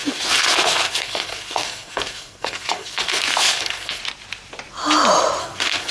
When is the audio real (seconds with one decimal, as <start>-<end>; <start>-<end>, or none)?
4.0-5.4